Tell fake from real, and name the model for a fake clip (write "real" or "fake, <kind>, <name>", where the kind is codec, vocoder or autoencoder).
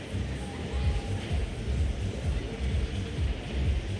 real